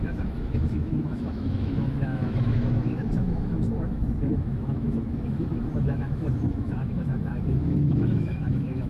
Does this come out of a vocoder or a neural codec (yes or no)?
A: yes